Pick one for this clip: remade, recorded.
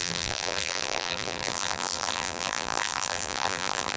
remade